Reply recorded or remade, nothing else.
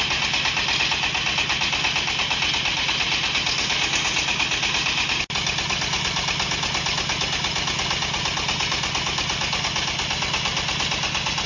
recorded